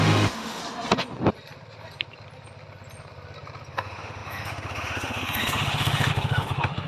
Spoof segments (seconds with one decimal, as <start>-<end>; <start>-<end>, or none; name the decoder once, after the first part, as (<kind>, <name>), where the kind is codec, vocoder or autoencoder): 0.0-0.6 (autoencoder, DAC-VAE); 3.7-6.9